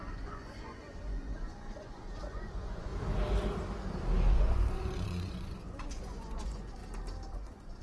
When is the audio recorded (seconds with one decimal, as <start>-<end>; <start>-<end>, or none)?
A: 2.9-4.3; 6.8-7.3